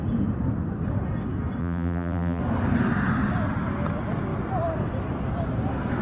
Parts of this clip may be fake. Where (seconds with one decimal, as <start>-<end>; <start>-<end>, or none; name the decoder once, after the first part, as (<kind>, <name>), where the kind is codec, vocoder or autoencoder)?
1.6-2.4 (vocoder, BigVGAN v2)